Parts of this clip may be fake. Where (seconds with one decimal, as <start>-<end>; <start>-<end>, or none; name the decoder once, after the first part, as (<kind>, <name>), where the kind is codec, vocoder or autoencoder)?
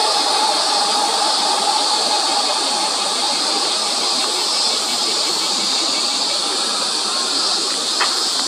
none